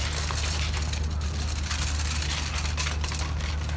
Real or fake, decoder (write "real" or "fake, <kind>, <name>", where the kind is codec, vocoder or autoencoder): real